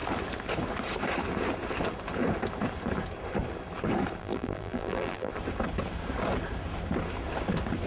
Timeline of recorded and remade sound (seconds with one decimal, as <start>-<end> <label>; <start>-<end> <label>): 0.0-4.2 recorded; 4.2-5.3 remade; 5.3-7.9 recorded